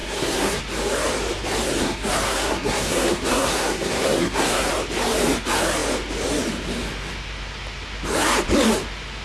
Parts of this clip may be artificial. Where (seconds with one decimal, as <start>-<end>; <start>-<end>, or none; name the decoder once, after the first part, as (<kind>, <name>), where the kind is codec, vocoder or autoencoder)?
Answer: 0.0-0.6 (codec, SNAC); 1.8-4.7